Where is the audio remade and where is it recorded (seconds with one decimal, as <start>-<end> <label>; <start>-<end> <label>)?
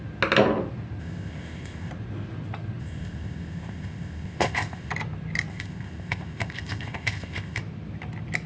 0.0-1.0 recorded; 1.0-1.9 remade; 1.9-2.8 recorded; 2.8-4.9 remade; 4.9-5.5 recorded; 5.5-7.6 remade; 7.6-8.5 recorded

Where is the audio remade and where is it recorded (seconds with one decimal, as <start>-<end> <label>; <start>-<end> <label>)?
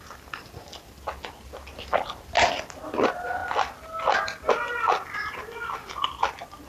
0.0-6.7 recorded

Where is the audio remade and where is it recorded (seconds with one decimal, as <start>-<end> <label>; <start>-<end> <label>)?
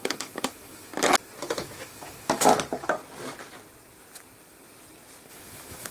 0.0-0.9 remade; 0.9-1.5 recorded; 1.5-2.5 remade; 2.5-5.3 recorded; 5.3-5.9 remade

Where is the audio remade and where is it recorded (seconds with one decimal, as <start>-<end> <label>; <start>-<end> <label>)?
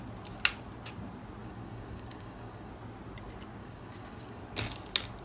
0.0-1.4 recorded; 1.4-2.7 remade; 2.7-3.6 recorded; 3.6-4.4 remade; 4.4-5.2 recorded